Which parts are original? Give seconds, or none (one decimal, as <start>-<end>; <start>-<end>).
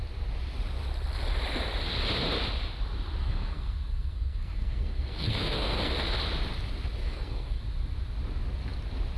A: 0.0-3.2; 5.9-7.0; 7.6-9.2